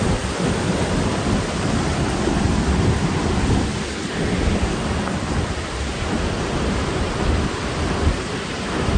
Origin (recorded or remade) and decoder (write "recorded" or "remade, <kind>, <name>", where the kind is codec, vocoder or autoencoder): recorded